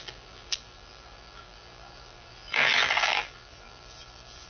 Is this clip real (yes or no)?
no